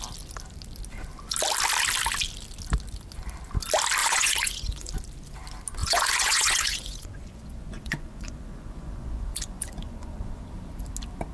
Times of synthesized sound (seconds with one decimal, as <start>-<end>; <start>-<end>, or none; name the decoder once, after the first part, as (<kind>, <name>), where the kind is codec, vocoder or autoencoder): 4.0-4.9 (vocoder, Vocos); 5.8-10.4